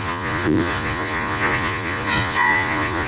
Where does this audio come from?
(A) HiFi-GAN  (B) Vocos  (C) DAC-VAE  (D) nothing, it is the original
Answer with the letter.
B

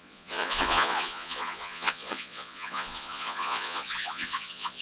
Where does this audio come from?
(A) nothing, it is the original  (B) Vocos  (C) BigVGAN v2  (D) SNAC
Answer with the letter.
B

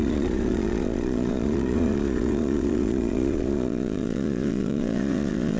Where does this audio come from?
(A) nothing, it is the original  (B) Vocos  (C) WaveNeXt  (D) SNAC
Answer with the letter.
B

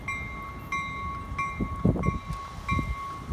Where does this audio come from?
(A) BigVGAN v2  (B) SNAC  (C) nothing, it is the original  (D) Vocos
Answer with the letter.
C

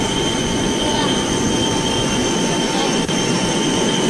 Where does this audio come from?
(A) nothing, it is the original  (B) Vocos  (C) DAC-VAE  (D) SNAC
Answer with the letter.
B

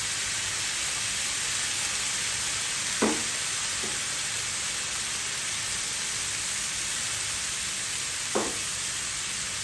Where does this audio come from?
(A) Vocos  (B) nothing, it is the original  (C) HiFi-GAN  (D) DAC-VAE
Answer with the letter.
B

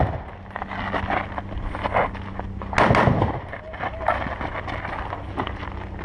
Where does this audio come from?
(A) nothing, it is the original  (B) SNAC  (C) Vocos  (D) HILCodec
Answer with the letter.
A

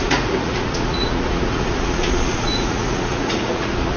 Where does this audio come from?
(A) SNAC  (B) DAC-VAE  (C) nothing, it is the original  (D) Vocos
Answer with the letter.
D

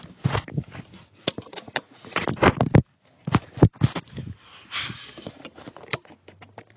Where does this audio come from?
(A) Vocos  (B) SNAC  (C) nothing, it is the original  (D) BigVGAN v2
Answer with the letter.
C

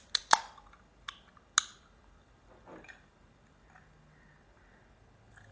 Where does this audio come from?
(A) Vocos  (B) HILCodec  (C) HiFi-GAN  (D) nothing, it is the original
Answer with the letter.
D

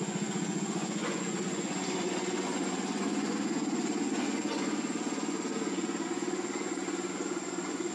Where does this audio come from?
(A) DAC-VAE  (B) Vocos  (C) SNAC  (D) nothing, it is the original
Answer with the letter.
B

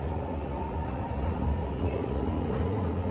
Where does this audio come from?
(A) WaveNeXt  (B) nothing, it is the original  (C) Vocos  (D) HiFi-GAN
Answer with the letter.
C